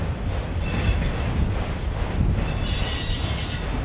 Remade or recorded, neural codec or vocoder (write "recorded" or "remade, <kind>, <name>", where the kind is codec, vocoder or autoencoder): recorded